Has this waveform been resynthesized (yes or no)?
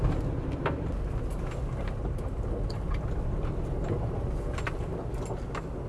no